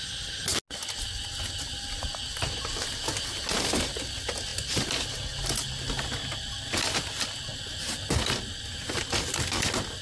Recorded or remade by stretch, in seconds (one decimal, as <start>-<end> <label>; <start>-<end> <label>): 0.0-10.0 recorded